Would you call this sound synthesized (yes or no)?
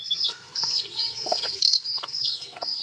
yes